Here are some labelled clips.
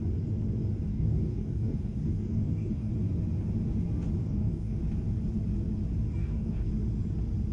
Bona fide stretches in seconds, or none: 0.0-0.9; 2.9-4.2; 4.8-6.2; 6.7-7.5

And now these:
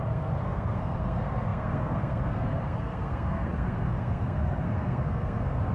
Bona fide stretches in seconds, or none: none

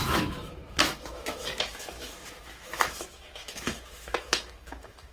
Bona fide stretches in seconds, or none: none